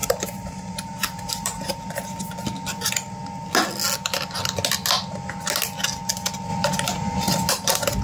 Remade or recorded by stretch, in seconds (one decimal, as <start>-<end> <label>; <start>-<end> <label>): 0.0-1.8 remade; 1.8-6.5 recorded; 6.5-7.5 remade; 7.5-8.0 recorded